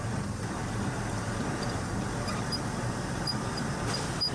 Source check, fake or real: fake